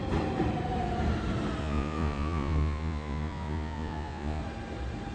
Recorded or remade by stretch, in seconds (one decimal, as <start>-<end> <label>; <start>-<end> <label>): 0.0-1.6 recorded; 1.6-4.4 remade; 4.4-5.1 recorded